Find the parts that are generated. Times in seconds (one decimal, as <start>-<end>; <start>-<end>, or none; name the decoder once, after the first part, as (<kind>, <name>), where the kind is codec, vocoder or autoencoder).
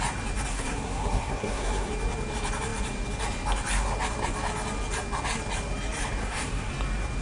0.5-1.9 (codec, SNAC); 6.2-6.7